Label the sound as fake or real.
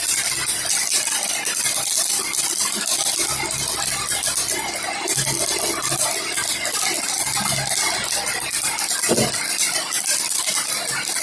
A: real